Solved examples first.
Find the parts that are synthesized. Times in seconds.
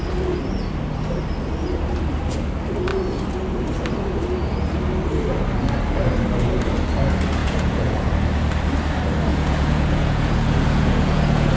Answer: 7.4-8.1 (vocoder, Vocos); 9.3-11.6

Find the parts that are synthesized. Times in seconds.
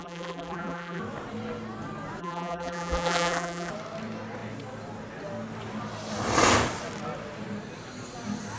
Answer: 0.0-1.0 (vocoder, BigVGAN v2); 2.2-3.7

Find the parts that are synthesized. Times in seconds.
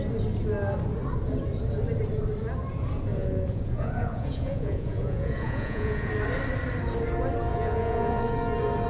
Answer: 3.1-6.1 (vocoder, Vocos); 7.5-8.2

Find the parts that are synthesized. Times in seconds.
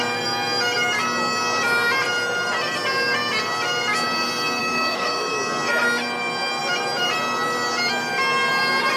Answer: 4.6-5.4 (autoencoder, DAC-VAE)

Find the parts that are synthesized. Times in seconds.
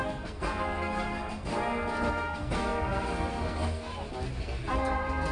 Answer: 0.0-1.5 (codec, SNAC); 2.1-3.9; 4.4-5.3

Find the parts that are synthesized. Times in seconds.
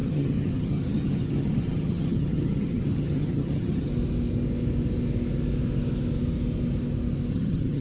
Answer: 0.0-3.9 (vocoder, HiFi-GAN); 7.3-7.8